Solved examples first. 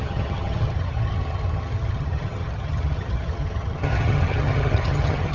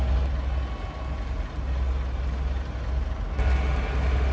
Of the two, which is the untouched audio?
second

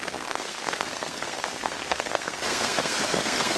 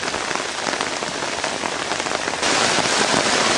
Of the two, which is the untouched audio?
second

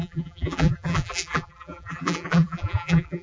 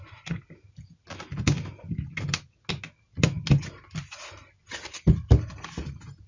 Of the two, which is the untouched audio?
second